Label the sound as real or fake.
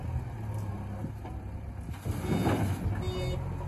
real